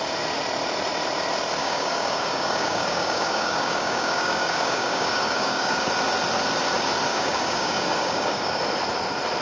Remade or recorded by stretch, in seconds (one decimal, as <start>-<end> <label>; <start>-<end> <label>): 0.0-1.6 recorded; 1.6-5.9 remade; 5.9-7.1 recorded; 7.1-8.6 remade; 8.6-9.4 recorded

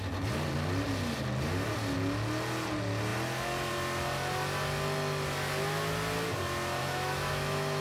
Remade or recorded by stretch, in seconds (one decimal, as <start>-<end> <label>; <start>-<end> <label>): 0.0-6.8 recorded; 6.8-7.8 remade

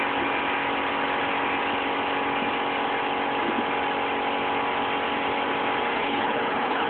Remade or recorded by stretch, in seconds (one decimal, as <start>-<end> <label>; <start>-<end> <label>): 0.0-5.9 recorded; 5.9-6.9 remade

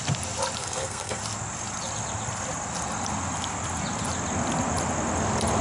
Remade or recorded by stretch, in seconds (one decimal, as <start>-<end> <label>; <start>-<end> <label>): 0.0-0.6 recorded; 0.6-1.2 remade; 1.2-5.6 recorded

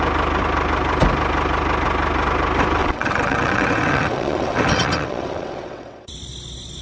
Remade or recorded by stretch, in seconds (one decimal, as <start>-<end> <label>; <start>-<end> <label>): 0.0-2.8 recorded; 2.8-6.1 remade; 6.1-6.8 recorded

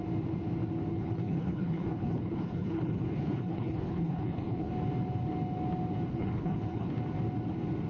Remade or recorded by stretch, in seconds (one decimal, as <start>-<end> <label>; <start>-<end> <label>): 0.0-0.9 recorded; 0.9-4.7 remade; 4.7-6.1 recorded; 6.1-6.9 remade; 6.9-7.9 recorded

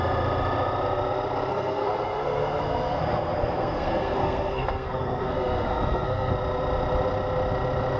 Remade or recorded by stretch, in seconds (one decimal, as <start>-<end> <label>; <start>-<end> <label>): 0.0-1.5 recorded; 1.5-6.3 remade; 6.3-8.0 recorded